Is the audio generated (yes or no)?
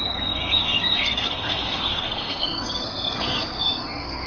yes